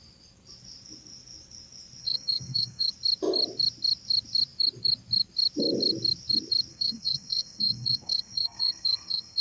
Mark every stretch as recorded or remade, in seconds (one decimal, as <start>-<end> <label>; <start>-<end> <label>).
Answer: 0.0-2.0 recorded; 2.0-2.9 remade; 2.9-6.7 recorded; 6.7-9.4 remade